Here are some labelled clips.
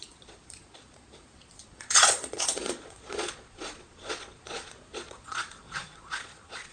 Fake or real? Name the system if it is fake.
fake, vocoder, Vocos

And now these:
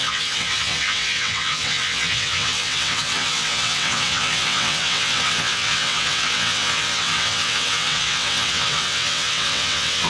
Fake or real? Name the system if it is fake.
fake, vocoder, WaveNeXt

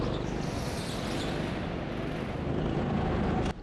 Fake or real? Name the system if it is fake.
real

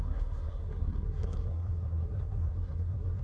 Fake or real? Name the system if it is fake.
fake, codec, SNAC